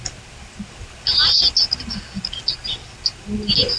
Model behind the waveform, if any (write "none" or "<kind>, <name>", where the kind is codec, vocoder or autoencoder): none